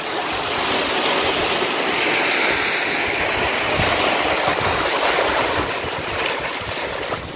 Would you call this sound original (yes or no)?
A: yes